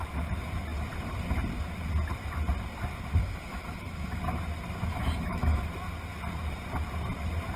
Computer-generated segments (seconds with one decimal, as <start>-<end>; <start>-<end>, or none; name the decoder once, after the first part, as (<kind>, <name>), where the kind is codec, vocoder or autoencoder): 3.2-4.2 (autoencoder, DAC-VAE); 4.9-5.6